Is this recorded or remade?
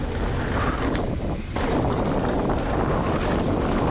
recorded